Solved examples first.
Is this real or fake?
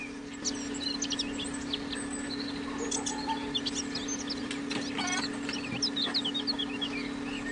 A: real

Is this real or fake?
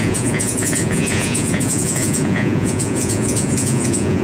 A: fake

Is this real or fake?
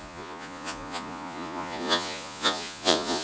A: fake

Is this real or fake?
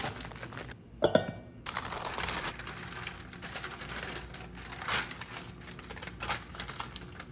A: real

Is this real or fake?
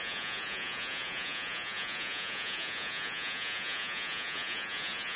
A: fake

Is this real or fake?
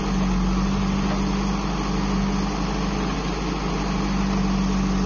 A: real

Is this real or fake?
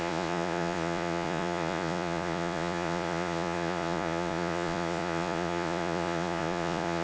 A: fake